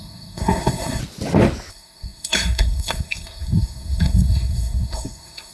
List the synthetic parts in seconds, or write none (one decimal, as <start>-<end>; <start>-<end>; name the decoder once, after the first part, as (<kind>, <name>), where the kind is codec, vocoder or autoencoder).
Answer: 0.0-1.0 (codec, SNAC); 1.7-5.5